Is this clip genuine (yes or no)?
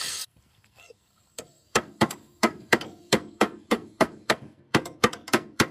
no